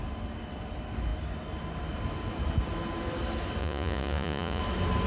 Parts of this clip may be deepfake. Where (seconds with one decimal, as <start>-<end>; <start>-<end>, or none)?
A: 3.6-4.6